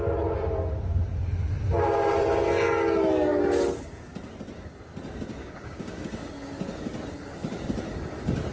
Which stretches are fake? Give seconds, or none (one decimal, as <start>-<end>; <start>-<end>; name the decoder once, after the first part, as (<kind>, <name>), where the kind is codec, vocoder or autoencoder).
5.4-6.3 (codec, DAC)